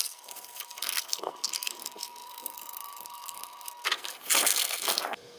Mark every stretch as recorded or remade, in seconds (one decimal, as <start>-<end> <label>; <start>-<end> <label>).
0.0-5.4 remade